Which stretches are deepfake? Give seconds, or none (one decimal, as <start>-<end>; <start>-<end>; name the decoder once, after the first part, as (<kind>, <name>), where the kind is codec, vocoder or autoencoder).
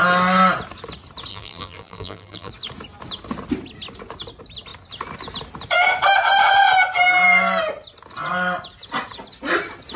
1.3-2.5 (vocoder, BigVGAN v2)